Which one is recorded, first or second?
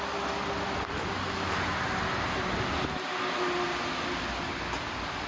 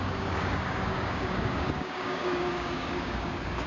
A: first